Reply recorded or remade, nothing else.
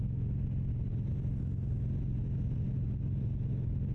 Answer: recorded